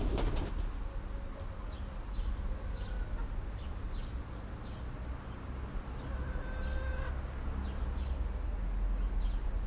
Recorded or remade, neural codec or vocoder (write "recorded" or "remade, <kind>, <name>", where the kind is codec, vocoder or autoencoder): recorded